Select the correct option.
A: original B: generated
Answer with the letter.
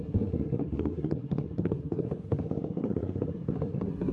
B